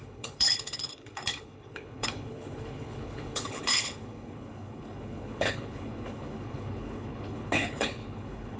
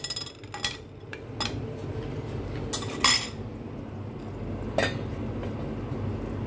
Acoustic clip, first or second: second